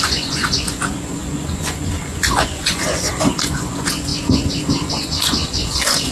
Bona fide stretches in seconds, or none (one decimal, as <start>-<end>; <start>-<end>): none